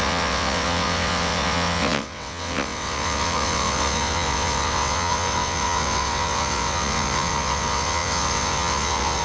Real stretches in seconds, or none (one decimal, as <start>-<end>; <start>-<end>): none